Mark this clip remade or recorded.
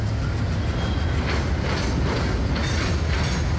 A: recorded